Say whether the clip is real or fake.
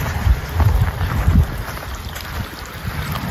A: real